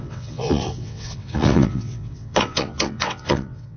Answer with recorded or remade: remade